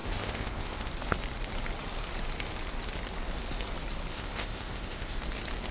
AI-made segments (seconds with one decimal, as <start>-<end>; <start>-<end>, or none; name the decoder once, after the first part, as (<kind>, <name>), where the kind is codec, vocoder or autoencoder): 0.0-0.9 (codec, ZipCodec); 4.1-5.2